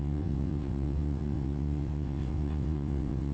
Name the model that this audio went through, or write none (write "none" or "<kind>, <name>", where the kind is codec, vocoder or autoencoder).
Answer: vocoder, WaveNeXt